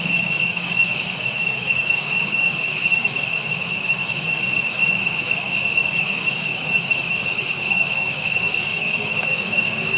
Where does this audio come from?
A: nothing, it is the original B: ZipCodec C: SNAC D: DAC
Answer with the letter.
D